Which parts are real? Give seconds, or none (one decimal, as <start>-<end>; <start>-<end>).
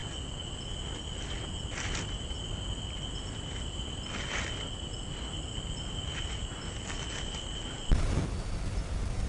0.0-9.3